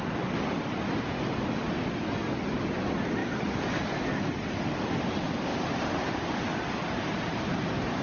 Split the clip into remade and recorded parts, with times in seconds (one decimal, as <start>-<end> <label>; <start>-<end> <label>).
0.0-3.2 recorded; 3.2-4.3 remade; 4.3-5.5 recorded; 5.5-6.2 remade; 6.2-6.8 recorded; 6.8-8.0 remade